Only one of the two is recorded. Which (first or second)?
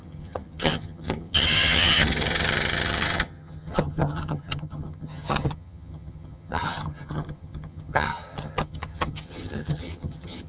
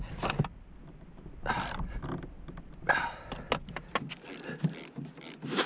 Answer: second